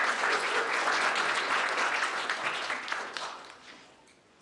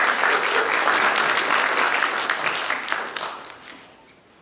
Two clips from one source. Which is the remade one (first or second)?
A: first